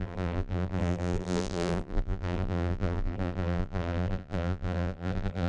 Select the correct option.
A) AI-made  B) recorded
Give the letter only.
A